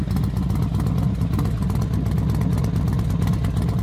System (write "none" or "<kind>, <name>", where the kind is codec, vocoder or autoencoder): none